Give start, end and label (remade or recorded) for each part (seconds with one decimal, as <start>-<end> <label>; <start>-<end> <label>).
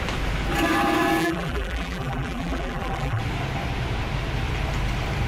0.0-1.2 recorded; 1.2-3.2 remade; 3.2-5.3 recorded